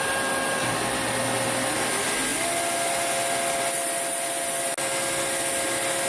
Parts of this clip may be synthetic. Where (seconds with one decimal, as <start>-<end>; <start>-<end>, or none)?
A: none